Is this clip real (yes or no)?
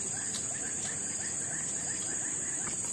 yes